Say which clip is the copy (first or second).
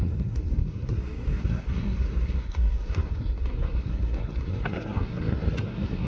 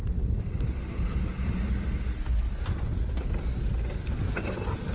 first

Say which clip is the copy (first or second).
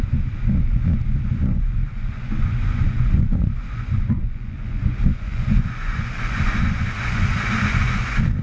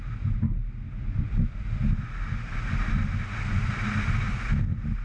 first